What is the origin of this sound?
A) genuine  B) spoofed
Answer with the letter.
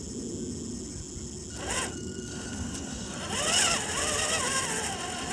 A